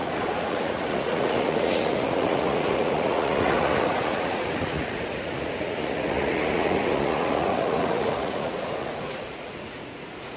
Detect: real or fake fake